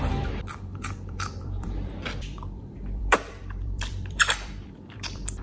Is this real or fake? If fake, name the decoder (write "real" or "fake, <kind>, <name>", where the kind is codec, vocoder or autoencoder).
fake, vocoder, BigVGAN v2